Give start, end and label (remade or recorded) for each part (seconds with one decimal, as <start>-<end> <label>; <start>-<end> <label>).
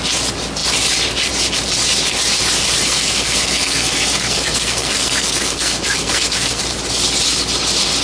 0.0-2.8 recorded; 2.8-6.6 remade; 6.6-8.0 recorded